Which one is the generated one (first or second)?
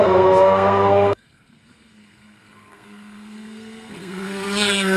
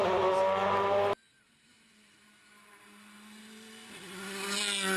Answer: first